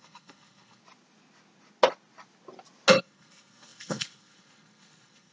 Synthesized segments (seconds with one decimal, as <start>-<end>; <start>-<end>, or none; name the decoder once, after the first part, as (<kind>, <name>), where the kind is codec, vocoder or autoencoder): 0.0-0.8 (codec, SNAC); 3.0-5.3